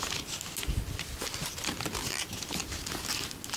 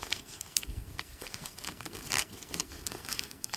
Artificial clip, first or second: second